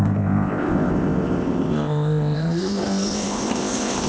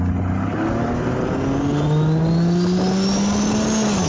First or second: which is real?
second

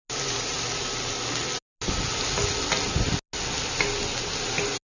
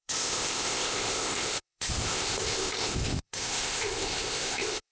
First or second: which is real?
first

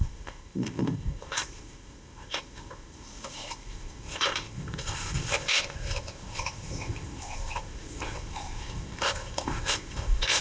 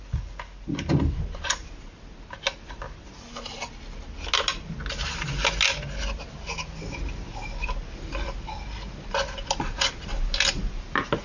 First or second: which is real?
second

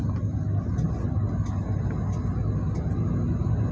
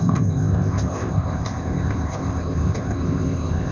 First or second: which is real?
first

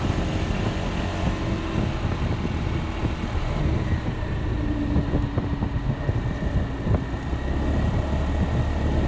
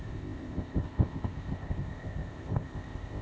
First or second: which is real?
first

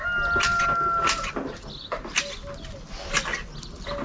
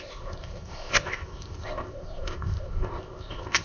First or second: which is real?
first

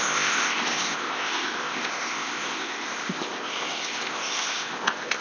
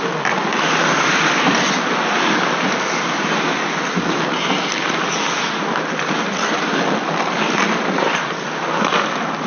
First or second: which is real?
second